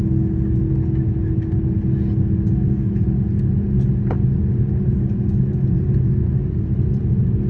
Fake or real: real